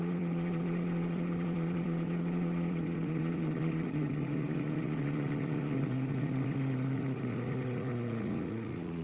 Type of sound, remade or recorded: remade